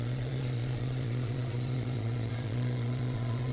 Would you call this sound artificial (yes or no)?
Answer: yes